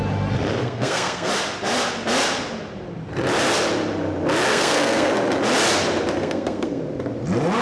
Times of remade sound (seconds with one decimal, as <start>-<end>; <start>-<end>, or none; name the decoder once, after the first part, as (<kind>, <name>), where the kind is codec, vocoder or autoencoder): 0.6-1.3 (codec, SNAC); 4.5-5.1; 6.2-6.8